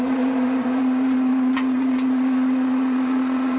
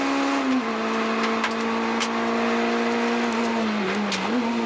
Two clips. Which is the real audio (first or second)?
second